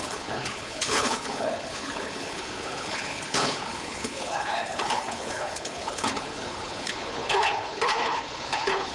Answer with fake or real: fake